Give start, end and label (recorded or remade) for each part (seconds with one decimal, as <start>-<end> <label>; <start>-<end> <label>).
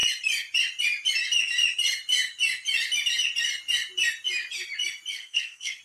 0.0-5.1 recorded; 5.1-5.8 remade